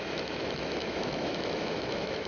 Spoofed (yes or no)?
yes